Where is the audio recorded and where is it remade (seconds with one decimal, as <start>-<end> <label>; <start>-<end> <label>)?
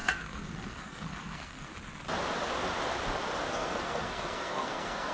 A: 0.0-1.7 remade; 1.7-3.5 recorded; 3.5-5.1 remade